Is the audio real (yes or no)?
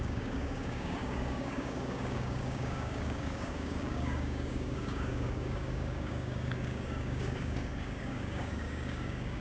no